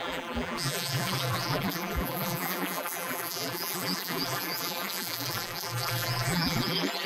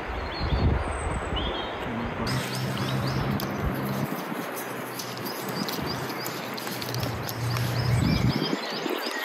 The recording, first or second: second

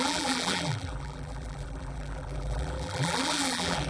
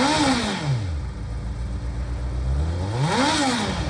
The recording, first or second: second